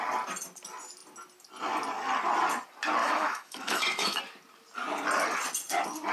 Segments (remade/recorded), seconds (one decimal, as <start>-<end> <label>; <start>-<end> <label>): 0.0-3.0 recorded; 3.0-4.2 remade; 4.2-6.1 recorded